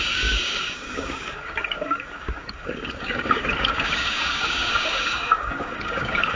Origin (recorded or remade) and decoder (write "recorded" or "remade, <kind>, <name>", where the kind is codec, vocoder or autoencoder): remade, codec, DAC